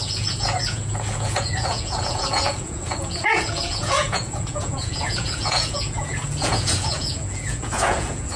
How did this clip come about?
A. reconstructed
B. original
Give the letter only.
A